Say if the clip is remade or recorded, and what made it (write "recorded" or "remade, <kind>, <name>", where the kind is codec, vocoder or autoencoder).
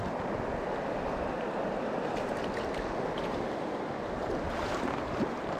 recorded